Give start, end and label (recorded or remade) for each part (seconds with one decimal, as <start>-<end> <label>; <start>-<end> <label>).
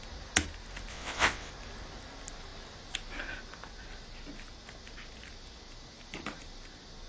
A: 0.0-0.9 recorded; 0.9-1.5 remade; 1.5-7.1 recorded